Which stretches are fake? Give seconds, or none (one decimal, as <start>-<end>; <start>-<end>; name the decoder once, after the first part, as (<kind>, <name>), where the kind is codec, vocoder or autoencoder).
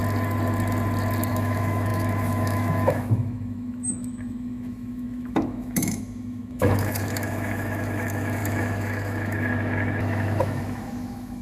1.3-11.4 (autoencoder, DAC-VAE)